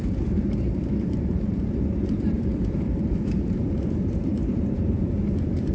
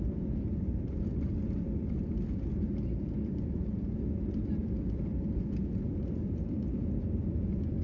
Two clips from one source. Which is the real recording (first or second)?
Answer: second